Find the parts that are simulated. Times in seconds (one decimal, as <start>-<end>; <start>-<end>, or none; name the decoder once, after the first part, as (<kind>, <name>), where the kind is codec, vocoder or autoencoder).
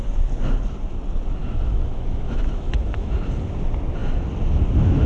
1.4-3.2 (autoencoder, DAC-VAE)